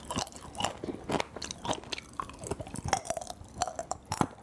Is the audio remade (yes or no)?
no